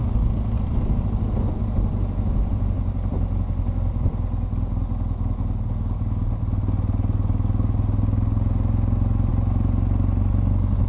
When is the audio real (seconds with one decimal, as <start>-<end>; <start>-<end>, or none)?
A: 0.0-10.9